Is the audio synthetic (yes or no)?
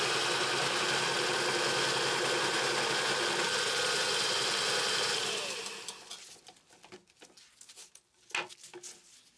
no